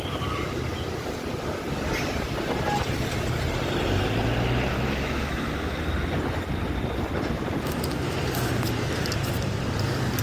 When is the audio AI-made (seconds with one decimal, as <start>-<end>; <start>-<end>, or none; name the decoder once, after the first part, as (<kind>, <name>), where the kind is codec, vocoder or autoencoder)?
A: 4.7-5.8 (autoencoder, DAC-VAE)